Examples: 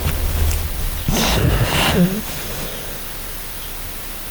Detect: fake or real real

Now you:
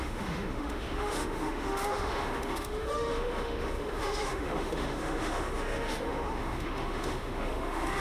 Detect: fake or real fake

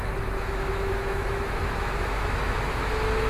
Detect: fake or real fake